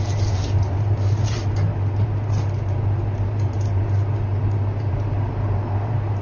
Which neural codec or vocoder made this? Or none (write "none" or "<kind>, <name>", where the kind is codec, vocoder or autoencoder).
vocoder, BigVGAN v2